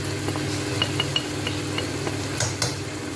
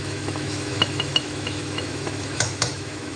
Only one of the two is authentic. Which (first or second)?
first